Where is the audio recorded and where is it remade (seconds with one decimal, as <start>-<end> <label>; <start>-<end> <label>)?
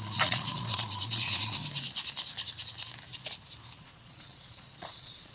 0.0-1.6 remade; 1.6-3.8 recorded; 3.8-5.3 remade